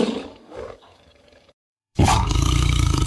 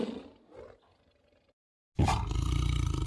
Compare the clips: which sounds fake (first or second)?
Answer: first